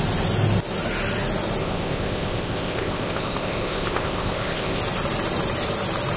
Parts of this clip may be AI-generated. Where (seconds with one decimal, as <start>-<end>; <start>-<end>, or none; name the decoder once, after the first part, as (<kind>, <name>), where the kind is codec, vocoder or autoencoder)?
1.6-4.8 (codec, ZipCodec)